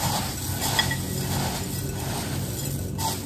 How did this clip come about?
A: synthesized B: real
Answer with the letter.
B